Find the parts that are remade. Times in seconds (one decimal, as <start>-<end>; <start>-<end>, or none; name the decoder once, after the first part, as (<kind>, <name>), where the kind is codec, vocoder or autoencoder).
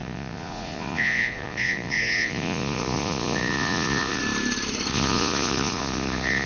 0.0-4.2 (vocoder, Vocos); 4.9-6.5